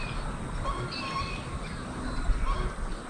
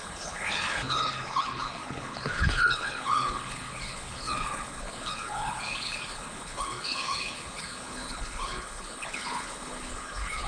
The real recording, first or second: first